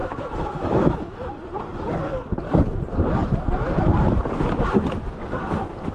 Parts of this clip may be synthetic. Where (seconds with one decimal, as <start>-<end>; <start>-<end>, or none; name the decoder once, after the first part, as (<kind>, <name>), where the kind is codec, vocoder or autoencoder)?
0.0-1.3 (autoencoder, DAC-VAE)